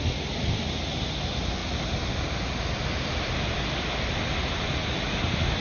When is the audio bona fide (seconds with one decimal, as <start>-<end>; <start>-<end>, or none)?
0.0-5.6